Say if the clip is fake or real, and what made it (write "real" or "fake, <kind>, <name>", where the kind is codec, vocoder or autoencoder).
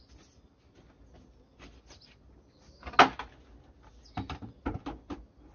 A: real